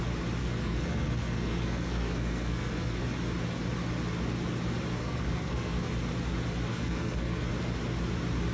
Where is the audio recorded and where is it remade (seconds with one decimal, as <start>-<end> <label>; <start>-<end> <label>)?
0.0-0.4 recorded; 0.4-3.0 remade; 3.0-5.0 recorded; 5.0-5.9 remade; 5.9-6.7 recorded; 6.7-7.5 remade; 7.5-8.5 recorded